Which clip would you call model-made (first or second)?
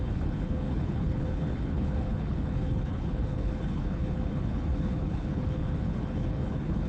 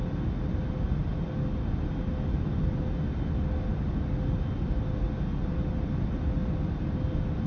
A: first